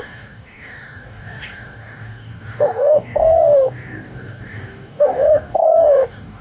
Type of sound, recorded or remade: remade